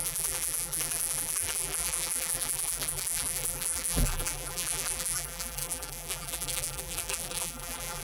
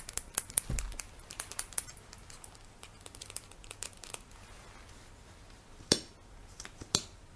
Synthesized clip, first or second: first